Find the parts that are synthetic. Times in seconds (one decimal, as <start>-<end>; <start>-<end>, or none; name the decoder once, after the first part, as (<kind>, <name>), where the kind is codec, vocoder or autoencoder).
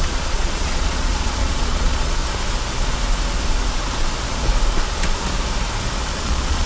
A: 0.0-2.2 (vocoder, Vocos); 6.1-6.7